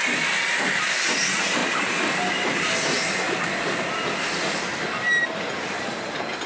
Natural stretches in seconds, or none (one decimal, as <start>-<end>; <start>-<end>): 0.0-6.5